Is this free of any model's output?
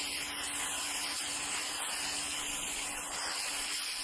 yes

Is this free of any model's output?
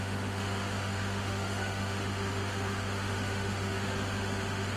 no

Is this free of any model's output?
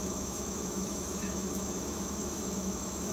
no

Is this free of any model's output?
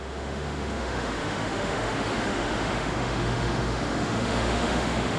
no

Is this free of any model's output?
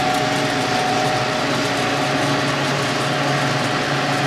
yes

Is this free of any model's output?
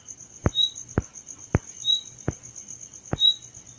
yes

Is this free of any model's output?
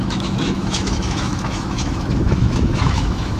no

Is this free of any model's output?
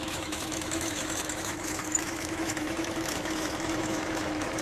no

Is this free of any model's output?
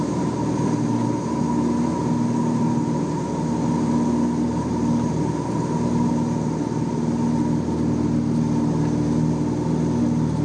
yes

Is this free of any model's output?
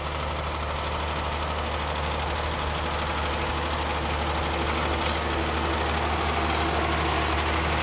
yes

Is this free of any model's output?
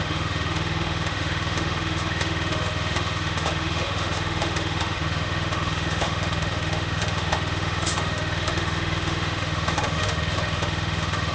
no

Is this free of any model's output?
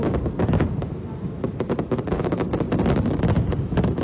yes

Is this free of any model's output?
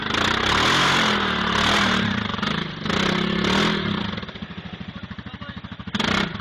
yes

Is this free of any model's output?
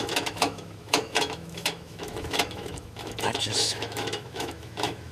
no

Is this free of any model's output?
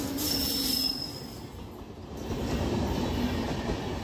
yes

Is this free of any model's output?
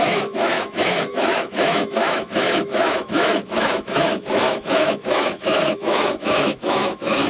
no